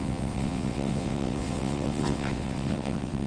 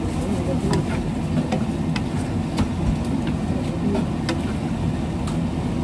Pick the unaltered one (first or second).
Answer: second